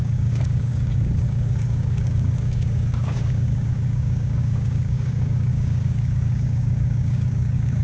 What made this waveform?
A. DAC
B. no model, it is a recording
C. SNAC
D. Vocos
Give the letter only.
A